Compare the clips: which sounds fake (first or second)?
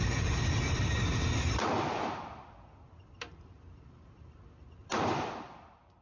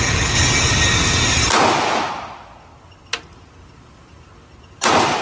first